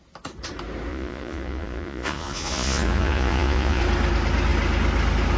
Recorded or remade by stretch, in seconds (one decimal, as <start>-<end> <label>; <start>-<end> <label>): 0.0-0.9 recorded; 0.9-3.8 remade; 3.8-5.4 recorded